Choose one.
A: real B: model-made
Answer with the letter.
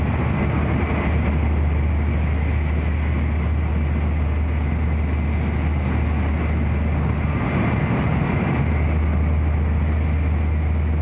A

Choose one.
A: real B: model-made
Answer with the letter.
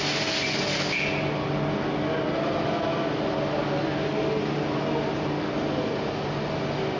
A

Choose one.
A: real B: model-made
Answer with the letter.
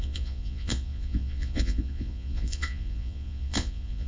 B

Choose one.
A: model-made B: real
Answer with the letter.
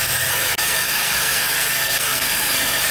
A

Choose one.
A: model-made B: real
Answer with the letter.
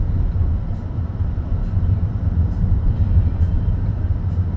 A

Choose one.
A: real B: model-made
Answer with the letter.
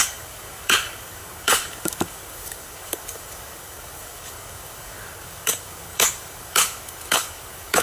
B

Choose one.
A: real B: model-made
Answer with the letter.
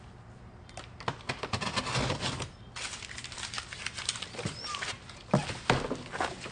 A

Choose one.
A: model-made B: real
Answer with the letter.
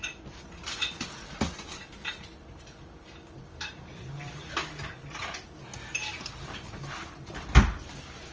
B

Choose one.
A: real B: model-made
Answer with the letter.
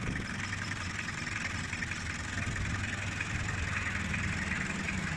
A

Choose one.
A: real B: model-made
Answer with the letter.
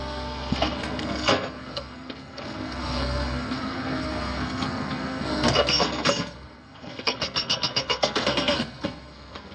B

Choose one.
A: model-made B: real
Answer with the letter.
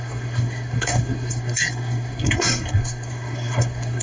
A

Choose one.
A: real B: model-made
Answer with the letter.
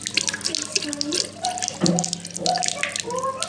A